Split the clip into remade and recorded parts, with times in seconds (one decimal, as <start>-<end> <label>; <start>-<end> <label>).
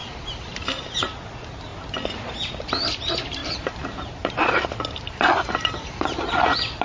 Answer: 0.0-0.8 remade; 0.8-3.4 recorded; 3.4-6.3 remade; 6.3-6.8 recorded